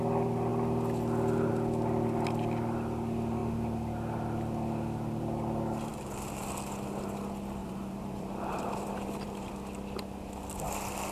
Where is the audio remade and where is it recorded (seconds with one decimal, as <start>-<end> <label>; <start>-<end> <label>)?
0.0-7.6 recorded; 7.6-9.5 remade; 9.5-11.1 recorded